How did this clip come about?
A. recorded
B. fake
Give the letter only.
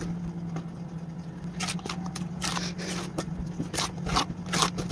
A